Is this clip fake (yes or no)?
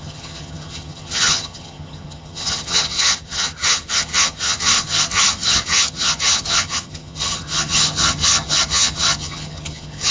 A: yes